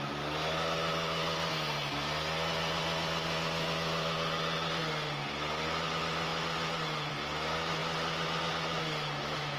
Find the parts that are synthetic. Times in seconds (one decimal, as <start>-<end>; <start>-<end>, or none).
none

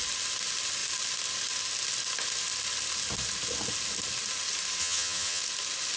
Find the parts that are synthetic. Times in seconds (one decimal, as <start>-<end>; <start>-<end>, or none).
4.8-5.4

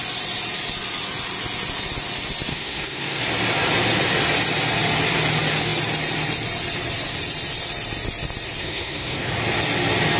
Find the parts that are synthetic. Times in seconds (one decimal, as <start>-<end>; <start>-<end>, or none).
2.5-3.2; 8.6-9.3

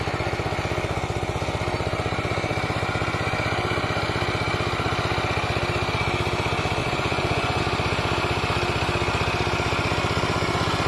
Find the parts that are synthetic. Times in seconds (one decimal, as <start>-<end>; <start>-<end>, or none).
6.8-7.6

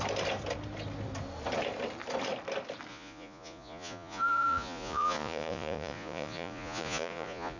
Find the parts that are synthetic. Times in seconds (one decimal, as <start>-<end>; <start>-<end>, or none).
2.9-7.6

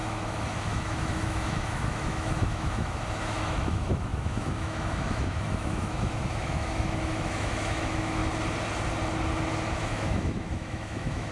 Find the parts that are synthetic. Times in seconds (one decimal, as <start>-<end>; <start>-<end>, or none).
0.0-8.2; 9.7-11.3

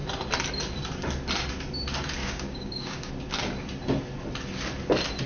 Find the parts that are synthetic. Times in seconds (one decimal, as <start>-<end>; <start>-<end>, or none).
2.2-3.1

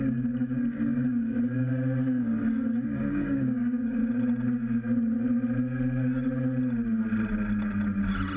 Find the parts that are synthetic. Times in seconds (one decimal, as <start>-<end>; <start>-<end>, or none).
0.0-4.0